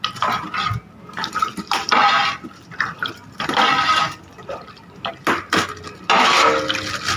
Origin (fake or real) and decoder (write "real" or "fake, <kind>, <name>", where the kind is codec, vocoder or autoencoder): real